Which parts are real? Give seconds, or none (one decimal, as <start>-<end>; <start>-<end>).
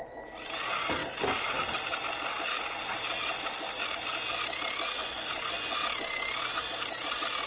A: 0.0-5.0; 5.8-7.5